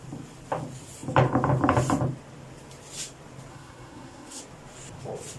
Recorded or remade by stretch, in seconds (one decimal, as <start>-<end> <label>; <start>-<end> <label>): 0.0-3.5 recorded; 3.5-4.4 remade; 4.4-5.4 recorded